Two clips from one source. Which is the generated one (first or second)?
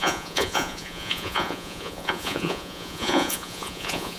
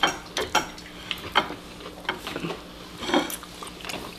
first